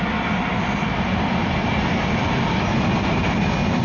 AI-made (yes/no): no